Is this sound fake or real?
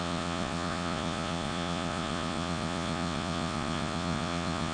fake